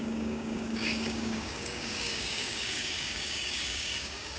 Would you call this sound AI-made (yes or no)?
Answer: yes